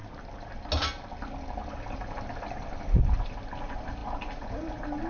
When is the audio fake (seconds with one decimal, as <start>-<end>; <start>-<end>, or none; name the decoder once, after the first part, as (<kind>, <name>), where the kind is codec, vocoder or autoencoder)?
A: none